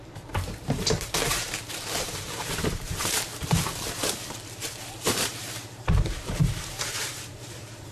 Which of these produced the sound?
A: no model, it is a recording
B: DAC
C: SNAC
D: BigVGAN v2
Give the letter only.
D